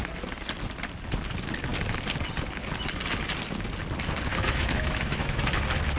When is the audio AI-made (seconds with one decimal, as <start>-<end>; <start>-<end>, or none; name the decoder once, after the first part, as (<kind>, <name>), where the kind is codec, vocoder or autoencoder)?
4.3-5.6 (autoencoder, DAC-VAE)